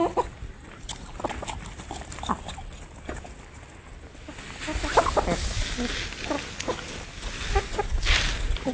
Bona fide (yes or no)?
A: yes